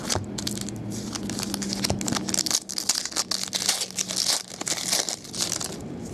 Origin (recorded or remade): recorded